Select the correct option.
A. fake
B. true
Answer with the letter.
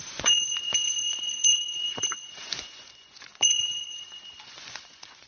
A